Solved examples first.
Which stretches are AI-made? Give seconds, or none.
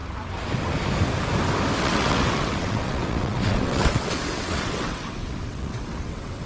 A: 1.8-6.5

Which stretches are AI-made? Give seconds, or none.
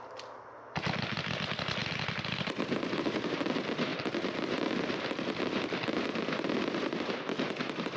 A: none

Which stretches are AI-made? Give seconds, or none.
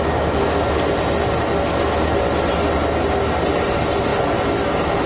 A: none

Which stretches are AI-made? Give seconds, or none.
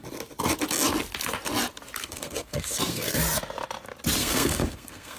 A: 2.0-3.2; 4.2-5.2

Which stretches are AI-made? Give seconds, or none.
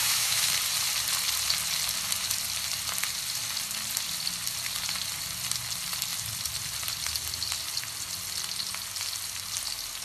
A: 0.0-0.5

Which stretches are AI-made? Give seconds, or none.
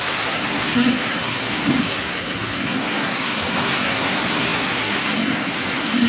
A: 0.0-6.1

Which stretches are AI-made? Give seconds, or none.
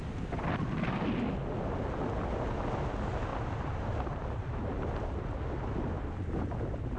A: 3.3-4.8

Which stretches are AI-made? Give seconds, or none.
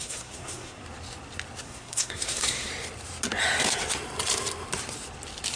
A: 0.0-0.8; 1.6-2.7